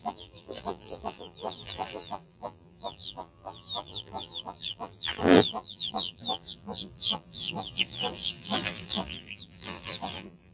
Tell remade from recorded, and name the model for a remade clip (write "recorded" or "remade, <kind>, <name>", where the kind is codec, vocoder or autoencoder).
remade, vocoder, BigVGAN v2